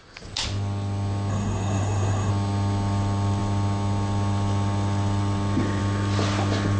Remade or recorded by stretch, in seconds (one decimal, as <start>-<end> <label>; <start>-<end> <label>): 0.0-1.3 recorded; 1.3-2.3 remade; 2.3-6.8 recorded